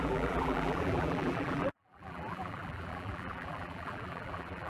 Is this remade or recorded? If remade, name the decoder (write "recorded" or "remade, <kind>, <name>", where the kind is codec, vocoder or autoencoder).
remade, vocoder, BigVGAN v2